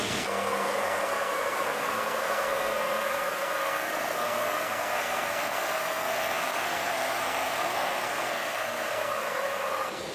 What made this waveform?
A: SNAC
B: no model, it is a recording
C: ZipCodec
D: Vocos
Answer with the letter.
A